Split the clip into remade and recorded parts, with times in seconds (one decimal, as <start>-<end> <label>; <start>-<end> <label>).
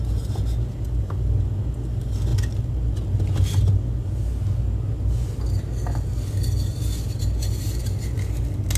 0.0-8.8 recorded